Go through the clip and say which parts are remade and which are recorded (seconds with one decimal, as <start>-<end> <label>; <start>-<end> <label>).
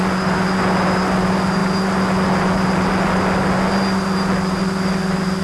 0.0-5.4 recorded